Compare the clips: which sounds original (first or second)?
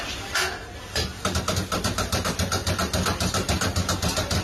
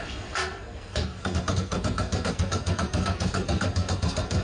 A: first